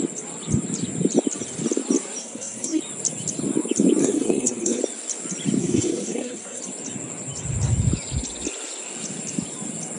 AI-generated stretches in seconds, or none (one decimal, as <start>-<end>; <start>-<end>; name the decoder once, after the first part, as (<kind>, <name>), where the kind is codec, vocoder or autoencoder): 2.2-2.8 (codec, SNAC); 4.0-4.8; 5.6-6.6